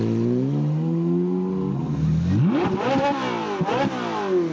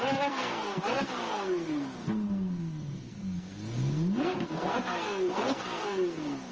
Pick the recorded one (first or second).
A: first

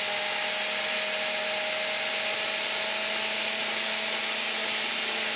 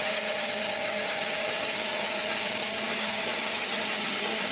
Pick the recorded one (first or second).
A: first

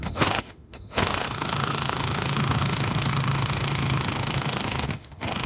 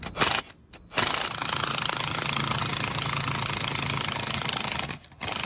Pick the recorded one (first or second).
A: second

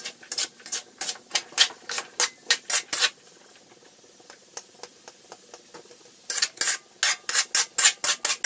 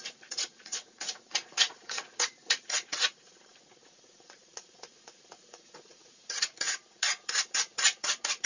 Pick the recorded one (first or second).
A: first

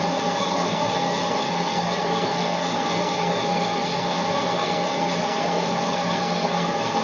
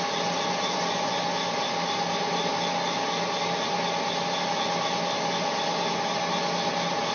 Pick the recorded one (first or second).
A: second